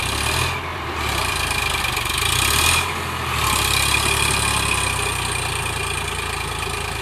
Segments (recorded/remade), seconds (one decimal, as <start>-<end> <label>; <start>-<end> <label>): 0.0-0.7 recorded; 0.7-1.8 remade; 1.8-7.0 recorded